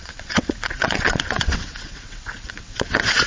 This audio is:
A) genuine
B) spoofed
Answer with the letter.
B